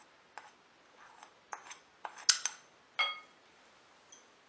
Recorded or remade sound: recorded